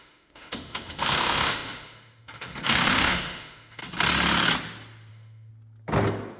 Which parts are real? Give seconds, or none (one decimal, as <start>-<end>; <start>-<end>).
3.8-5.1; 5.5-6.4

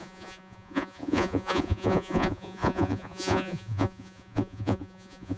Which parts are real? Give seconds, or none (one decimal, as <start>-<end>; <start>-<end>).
none

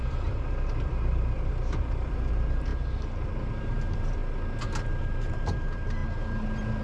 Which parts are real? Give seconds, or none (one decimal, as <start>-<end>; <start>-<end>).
2.7-3.7; 4.2-5.0; 6.0-6.8

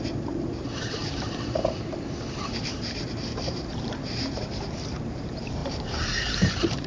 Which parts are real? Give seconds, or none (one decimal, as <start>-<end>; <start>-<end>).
none

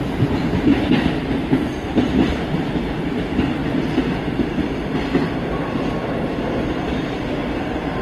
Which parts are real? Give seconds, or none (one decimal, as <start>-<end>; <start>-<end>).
0.7-2.3; 3.6-7.6